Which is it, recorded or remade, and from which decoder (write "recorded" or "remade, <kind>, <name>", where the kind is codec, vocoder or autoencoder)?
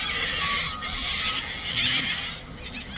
recorded